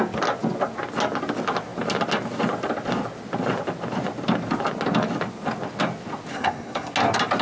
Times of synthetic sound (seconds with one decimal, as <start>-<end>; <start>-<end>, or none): 6.3-6.9